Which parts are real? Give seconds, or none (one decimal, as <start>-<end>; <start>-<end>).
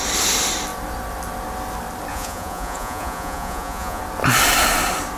0.0-2.1; 4.0-5.2